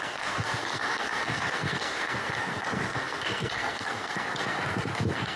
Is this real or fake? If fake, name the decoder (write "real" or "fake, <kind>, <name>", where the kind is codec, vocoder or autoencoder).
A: fake, codec, SNAC